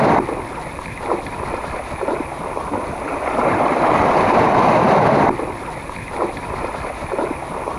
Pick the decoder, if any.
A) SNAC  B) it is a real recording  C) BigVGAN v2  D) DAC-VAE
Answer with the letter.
C